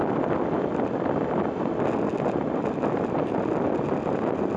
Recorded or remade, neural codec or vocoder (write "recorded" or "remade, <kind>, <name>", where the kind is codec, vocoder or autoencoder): recorded